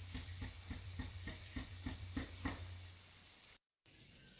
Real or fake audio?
fake